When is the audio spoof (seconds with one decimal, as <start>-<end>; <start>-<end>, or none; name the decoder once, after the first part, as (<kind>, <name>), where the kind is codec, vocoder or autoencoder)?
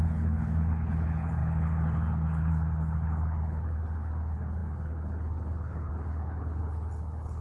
0.0-7.4 (codec, HILCodec)